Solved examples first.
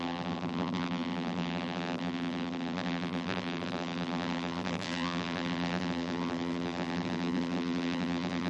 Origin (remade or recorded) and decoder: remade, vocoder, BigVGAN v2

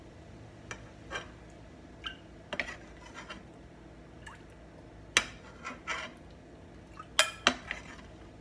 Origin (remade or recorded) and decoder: recorded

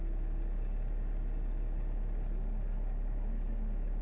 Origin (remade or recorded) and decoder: recorded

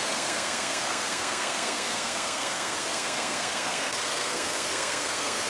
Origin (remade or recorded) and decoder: remade, codec, SNAC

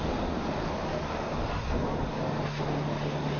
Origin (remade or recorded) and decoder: recorded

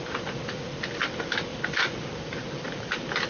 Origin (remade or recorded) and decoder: recorded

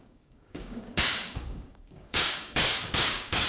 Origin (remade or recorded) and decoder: remade, codec, DAC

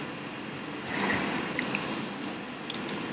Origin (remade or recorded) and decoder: recorded